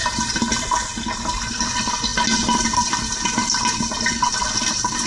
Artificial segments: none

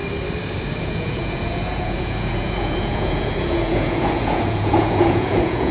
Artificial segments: 0.8-5.7

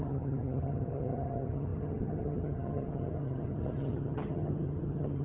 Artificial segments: 0.0-5.2